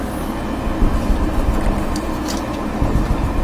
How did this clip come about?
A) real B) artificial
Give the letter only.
A